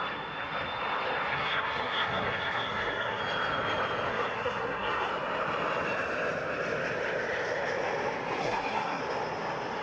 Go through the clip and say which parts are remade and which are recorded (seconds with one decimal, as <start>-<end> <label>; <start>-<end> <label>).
0.0-1.3 recorded; 1.3-3.2 remade; 3.2-4.1 recorded; 4.1-5.1 remade; 5.1-8.4 recorded; 8.4-9.0 remade; 9.0-9.8 recorded